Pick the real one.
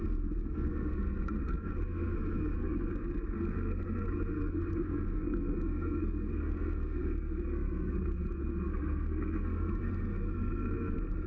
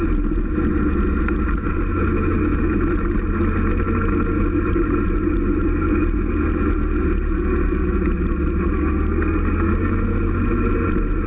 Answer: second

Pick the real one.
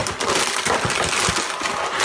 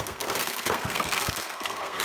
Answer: first